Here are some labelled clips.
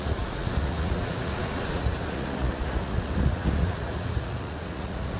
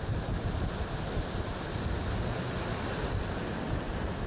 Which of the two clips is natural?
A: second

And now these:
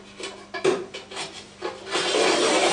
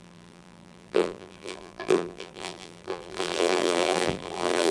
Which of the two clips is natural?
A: first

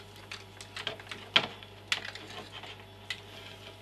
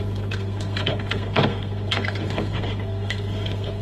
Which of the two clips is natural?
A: first